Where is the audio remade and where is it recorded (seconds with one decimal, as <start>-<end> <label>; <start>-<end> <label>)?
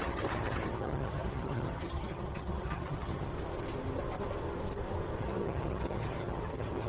0.0-3.3 remade; 3.3-5.2 recorded; 5.2-6.9 remade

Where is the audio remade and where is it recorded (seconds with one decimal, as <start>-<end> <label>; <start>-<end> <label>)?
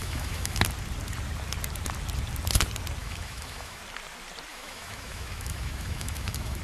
0.0-0.6 remade; 0.6-3.0 recorded; 3.0-3.8 remade; 3.8-4.5 recorded; 4.5-6.6 remade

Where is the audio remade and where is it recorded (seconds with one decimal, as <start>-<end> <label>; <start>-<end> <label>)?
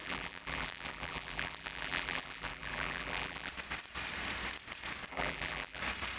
0.0-3.5 remade; 3.5-5.1 recorded; 5.1-5.8 remade; 5.8-6.2 recorded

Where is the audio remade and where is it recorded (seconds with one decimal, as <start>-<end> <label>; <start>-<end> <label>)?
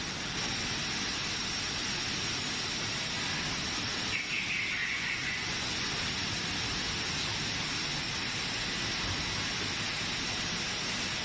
0.0-4.8 recorded; 4.8-5.9 remade; 5.9-11.2 recorded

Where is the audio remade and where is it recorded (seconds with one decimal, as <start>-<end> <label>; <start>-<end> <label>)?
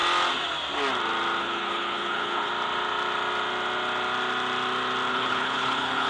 0.0-1.4 recorded; 1.4-2.5 remade; 2.5-5.1 recorded; 5.1-6.1 remade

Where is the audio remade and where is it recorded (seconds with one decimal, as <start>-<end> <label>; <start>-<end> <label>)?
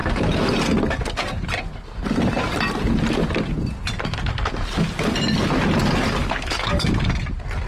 0.0-6.2 recorded; 6.2-6.9 remade; 6.9-7.7 recorded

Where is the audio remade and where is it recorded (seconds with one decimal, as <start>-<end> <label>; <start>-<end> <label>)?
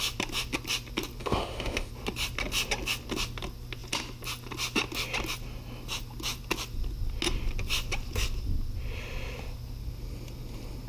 0.0-1.2 recorded; 1.2-1.9 remade; 1.9-10.9 recorded